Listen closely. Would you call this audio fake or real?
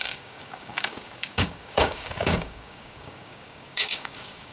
fake